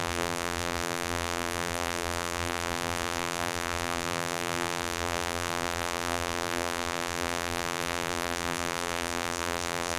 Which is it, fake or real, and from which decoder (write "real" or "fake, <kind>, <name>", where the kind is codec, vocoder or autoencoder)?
fake, vocoder, BigVGAN v2